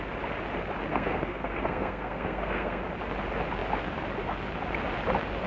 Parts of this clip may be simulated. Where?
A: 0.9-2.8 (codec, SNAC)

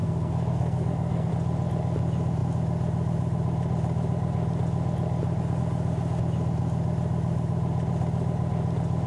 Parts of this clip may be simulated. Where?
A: 0.0-1.3 (codec, SNAC)